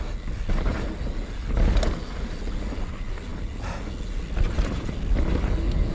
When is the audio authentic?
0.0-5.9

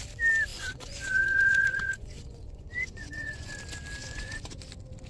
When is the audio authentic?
0.0-0.5; 3.6-4.0; 4.6-5.1

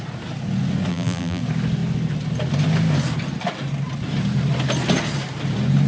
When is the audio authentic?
0.0-0.9; 1.4-5.9

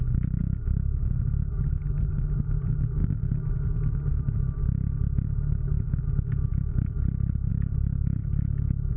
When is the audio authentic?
3.0-3.5; 6.5-7.5; 8.2-9.0